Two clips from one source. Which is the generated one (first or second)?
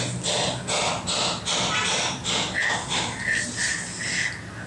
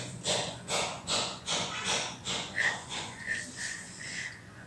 second